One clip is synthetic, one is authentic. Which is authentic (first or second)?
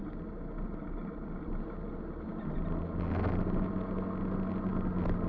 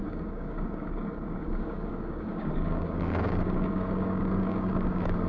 first